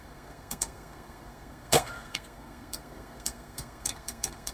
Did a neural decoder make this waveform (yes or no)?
yes